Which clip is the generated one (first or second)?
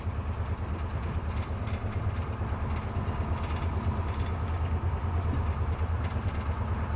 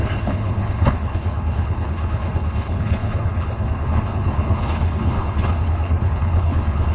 second